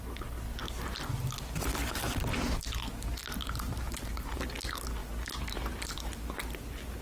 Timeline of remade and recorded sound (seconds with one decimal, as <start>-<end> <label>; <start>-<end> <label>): 0.0-3.4 recorded; 3.4-4.5 remade; 4.5-7.0 recorded